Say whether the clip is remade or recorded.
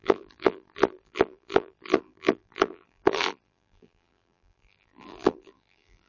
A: remade